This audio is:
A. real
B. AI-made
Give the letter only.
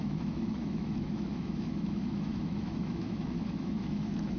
B